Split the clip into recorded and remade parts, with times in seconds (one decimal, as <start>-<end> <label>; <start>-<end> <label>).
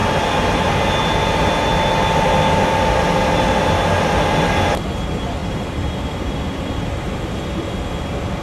0.0-5.4 recorded; 5.4-7.3 remade; 7.3-8.4 recorded